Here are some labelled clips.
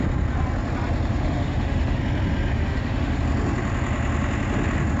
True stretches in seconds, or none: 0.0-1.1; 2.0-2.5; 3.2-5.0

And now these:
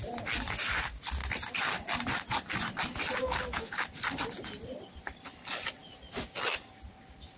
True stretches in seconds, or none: 0.0-3.2; 3.7-7.4

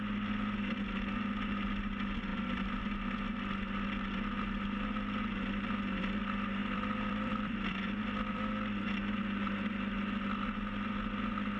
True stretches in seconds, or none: 0.0-6.6; 9.2-11.6

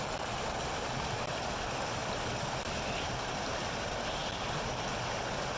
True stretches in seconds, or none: 0.0-5.6